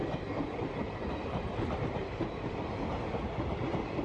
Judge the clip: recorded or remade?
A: recorded